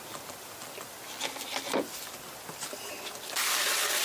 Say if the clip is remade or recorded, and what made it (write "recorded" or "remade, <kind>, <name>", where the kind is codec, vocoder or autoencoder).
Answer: recorded